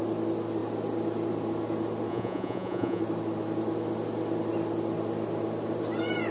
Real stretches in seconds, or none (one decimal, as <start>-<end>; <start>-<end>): 0.0-2.1; 3.0-6.3